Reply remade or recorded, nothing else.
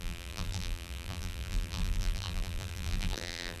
remade